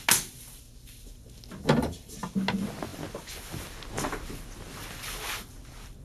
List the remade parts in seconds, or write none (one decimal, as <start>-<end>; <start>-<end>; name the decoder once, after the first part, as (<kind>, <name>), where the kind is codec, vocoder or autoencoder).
none